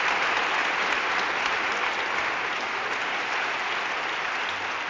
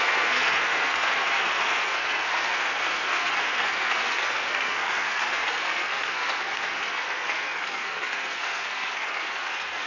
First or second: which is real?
first